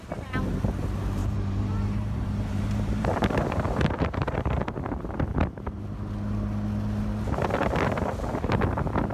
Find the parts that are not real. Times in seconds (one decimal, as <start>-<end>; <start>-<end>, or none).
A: 1.2-5.4